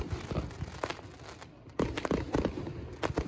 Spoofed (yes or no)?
no